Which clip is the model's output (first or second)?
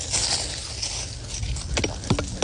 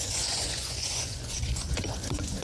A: second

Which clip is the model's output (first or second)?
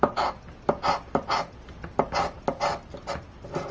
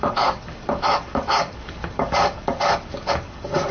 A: second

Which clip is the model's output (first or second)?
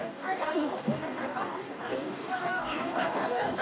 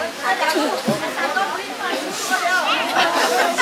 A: first